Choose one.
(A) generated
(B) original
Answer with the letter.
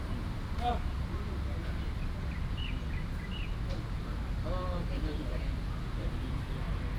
B